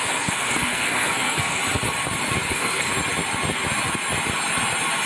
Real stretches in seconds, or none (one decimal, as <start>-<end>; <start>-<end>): 1.6-2.5; 2.9-5.1